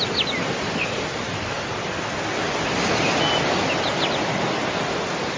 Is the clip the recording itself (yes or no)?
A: yes